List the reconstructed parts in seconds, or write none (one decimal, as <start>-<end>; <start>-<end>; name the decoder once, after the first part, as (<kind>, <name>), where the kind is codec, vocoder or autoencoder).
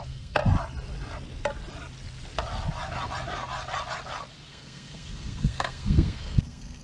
0.0-0.4 (codec, SNAC); 4.5-6.8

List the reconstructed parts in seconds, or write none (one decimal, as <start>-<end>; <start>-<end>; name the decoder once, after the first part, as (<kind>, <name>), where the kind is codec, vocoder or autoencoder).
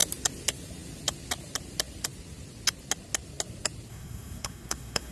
3.9-5.1 (codec, SNAC)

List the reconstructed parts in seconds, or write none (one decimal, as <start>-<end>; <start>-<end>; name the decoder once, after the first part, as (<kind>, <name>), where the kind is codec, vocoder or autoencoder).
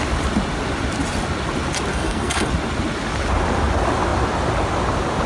1.9-2.5 (codec, SNAC)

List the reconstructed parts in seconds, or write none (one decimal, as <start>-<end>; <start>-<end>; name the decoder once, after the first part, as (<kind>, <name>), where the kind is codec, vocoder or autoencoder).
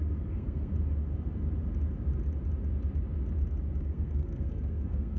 0.0-0.7 (codec, SNAC); 3.8-5.2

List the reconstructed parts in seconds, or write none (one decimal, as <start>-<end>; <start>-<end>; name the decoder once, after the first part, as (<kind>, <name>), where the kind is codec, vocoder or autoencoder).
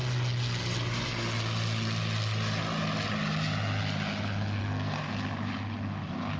4.6-5.1 (codec, SNAC)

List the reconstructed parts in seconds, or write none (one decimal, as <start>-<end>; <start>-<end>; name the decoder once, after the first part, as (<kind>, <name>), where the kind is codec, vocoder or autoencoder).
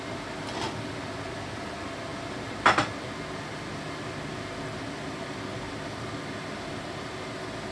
none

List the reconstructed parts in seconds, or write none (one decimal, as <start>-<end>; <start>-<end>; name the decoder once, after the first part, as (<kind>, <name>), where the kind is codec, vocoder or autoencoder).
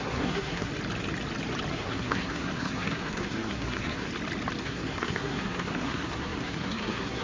0.0-0.7 (codec, SNAC); 1.7-4.1; 4.6-7.2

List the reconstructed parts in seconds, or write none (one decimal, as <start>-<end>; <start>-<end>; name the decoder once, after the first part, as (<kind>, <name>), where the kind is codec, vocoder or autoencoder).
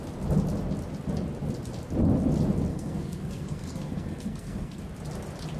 2.7-4.8 (codec, SNAC)